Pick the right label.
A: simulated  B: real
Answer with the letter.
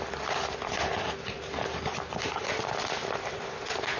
B